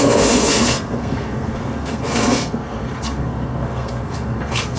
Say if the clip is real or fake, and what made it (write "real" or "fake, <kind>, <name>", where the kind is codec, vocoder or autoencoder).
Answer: fake, codec, SNAC